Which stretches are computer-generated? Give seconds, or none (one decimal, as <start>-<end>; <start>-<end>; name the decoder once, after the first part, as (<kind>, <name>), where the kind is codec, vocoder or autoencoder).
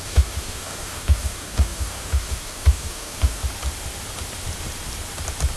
0.0-3.4 (codec, DAC)